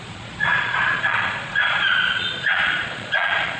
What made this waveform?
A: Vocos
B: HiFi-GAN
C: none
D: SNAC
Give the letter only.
A